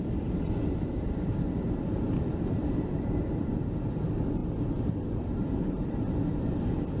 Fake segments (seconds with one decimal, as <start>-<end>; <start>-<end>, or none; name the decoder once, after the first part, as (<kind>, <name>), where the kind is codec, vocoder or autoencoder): 0.0-4.4 (vocoder, BigVGAN v2); 5.1-7.0